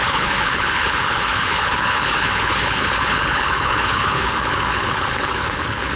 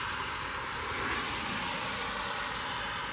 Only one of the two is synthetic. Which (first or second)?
first